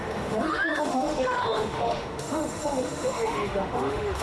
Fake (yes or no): yes